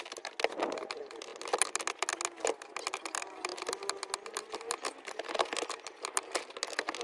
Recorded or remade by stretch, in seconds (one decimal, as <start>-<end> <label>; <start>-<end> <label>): 0.0-7.0 recorded